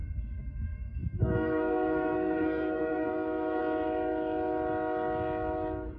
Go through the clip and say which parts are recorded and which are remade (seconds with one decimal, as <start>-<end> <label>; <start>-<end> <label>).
0.0-3.6 remade; 3.6-6.0 recorded